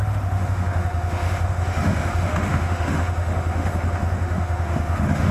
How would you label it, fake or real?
fake